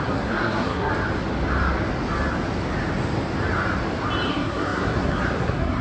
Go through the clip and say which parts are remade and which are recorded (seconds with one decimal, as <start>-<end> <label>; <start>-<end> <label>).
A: 0.0-0.9 remade; 0.9-4.3 recorded; 4.3-5.8 remade